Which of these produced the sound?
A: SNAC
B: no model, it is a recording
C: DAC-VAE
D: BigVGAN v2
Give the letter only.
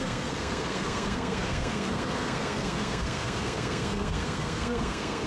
A